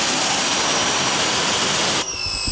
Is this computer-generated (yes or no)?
no